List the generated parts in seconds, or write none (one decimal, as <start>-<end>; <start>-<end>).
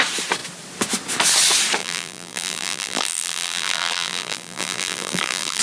1.8-5.6